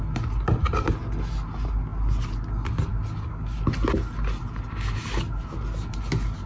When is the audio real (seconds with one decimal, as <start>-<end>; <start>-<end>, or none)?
0.0-6.5